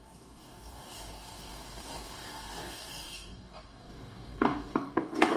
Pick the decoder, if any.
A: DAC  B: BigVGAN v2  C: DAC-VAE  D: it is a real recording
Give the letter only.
A